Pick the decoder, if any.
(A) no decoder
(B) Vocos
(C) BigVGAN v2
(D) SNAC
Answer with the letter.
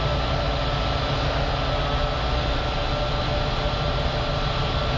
A